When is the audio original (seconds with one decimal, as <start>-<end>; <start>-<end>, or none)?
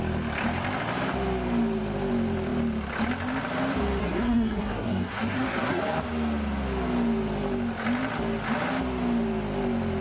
0.0-4.0; 5.8-10.0